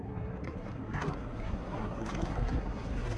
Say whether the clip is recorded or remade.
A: remade